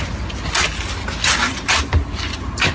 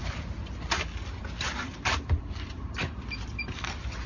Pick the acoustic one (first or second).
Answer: first